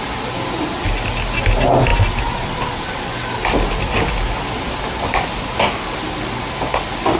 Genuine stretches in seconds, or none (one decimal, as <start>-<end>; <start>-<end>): 0.0-7.2